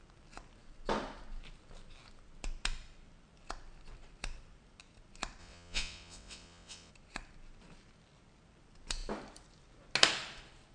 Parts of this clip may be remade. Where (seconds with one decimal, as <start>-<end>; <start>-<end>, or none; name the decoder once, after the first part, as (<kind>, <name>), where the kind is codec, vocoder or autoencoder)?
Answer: 5.4-6.9 (vocoder, WaveNeXt)